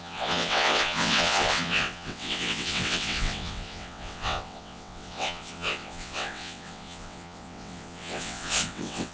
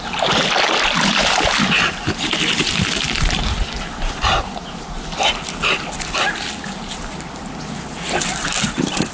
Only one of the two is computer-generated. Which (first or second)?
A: first